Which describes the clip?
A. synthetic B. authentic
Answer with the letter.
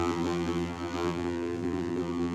A